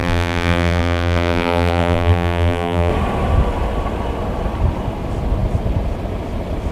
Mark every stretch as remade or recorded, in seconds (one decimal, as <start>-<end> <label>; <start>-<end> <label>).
0.0-2.9 remade; 2.9-6.7 recorded